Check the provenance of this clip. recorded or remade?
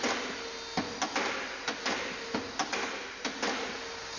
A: recorded